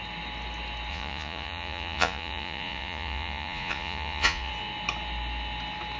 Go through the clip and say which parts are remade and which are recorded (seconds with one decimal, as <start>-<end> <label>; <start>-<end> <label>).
0.0-0.9 recorded; 0.9-4.5 remade; 4.5-6.0 recorded